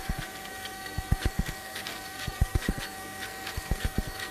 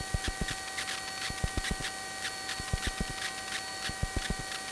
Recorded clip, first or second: second